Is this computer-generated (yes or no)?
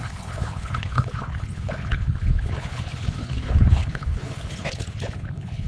yes